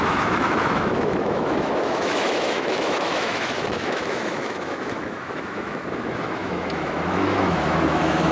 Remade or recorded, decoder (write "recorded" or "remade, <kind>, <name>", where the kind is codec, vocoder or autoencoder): remade, autoencoder, DAC-VAE